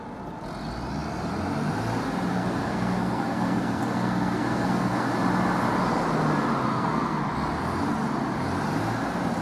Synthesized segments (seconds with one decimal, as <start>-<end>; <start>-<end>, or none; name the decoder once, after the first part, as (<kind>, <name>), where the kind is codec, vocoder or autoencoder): 2.3-5.1 (codec, SNAC); 6.7-7.2